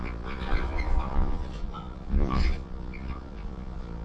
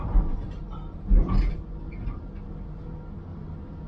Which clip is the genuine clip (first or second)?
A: second